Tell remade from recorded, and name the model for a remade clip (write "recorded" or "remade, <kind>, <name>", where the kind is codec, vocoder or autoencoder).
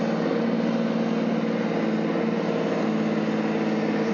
recorded